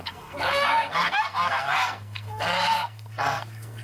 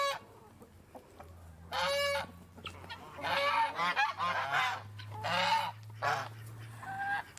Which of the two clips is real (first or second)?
second